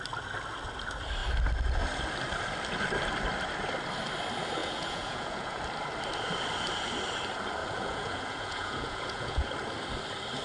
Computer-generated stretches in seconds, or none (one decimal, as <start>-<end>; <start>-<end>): 4.6-5.6; 7.6-9.5